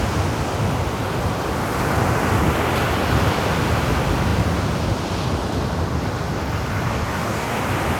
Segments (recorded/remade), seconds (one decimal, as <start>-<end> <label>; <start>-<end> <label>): 0.0-6.9 recorded; 6.9-7.6 remade; 7.6-8.0 recorded